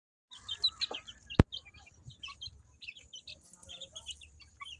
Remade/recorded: recorded